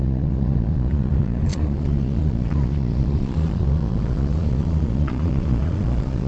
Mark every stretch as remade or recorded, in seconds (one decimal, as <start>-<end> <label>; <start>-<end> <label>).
0.0-6.3 remade